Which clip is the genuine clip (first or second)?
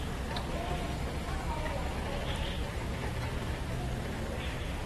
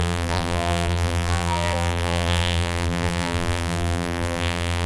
first